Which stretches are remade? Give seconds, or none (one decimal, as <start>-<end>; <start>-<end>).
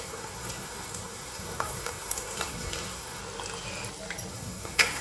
0.0-3.2; 4.3-5.0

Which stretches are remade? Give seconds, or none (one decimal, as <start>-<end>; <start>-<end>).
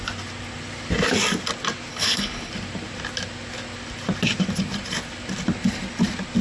1.9-2.5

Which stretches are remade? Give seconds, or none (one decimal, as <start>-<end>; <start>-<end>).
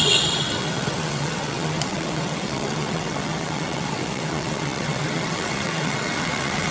0.0-6.7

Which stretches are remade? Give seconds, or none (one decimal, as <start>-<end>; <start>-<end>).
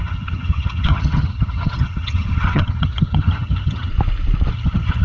0.0-3.9; 4.5-5.0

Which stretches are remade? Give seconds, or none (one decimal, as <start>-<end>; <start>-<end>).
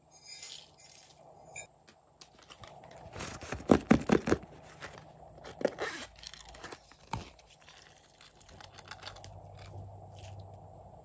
2.6-3.2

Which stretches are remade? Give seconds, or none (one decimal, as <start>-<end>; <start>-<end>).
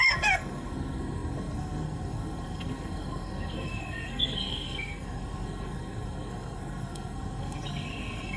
0.0-8.4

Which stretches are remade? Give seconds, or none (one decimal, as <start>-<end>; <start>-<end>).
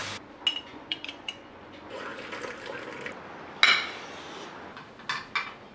0.6-2.1